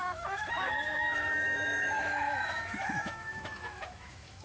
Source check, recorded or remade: remade